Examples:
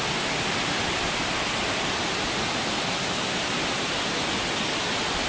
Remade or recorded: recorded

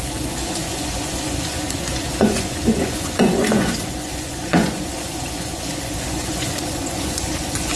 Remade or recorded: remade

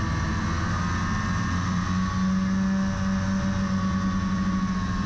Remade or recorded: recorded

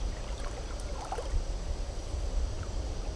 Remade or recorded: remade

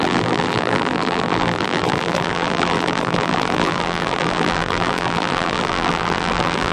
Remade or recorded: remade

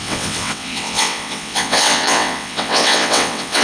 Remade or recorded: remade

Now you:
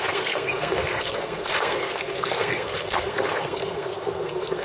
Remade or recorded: remade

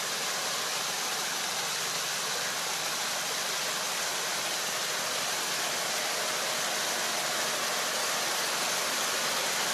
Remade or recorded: recorded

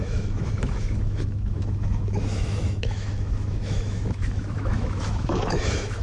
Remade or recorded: remade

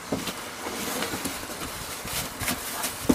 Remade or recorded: recorded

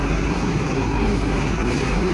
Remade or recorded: remade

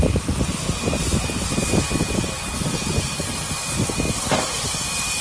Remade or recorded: recorded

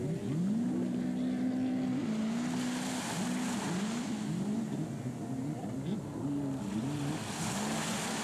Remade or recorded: recorded